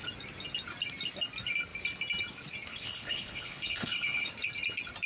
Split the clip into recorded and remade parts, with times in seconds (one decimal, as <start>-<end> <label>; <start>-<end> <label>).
0.0-2.7 recorded; 2.7-4.3 remade; 4.3-5.1 recorded